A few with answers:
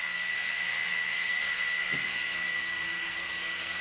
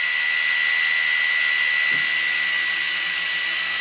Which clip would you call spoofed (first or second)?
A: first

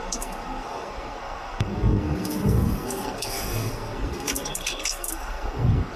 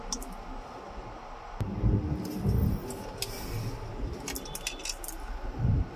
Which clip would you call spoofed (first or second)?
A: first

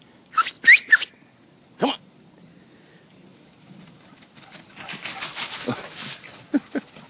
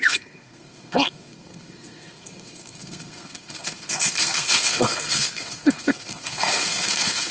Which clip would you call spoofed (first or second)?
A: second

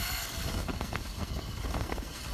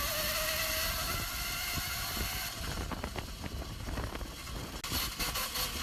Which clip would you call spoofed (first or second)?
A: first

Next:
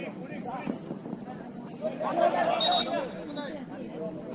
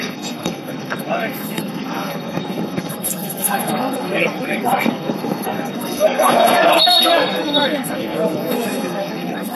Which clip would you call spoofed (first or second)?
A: second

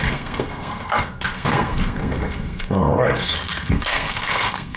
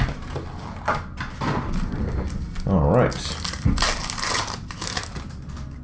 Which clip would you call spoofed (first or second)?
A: first